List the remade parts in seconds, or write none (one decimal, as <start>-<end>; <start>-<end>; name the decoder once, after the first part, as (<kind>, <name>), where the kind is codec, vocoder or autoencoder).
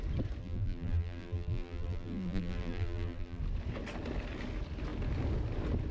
0.4-3.4 (vocoder, BigVGAN v2)